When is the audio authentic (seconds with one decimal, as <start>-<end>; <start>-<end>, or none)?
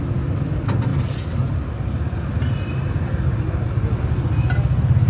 0.0-5.1